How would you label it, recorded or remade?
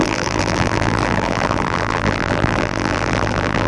remade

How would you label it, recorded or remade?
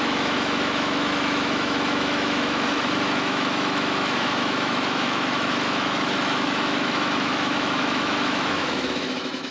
remade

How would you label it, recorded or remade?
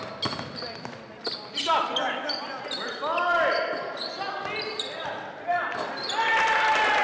recorded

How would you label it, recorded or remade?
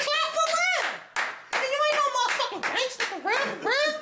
recorded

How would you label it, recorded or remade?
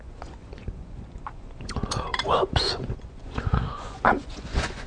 remade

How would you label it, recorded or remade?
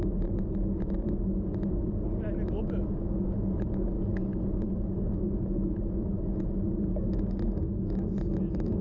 recorded